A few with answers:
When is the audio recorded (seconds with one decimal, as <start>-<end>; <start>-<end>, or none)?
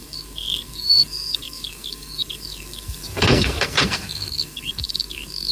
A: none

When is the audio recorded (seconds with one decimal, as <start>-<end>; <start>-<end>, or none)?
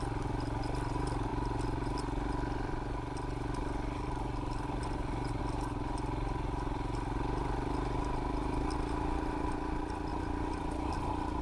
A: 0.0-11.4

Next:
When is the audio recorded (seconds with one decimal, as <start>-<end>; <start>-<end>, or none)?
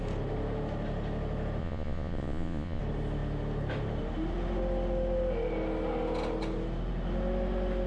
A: 0.0-1.6; 2.8-7.9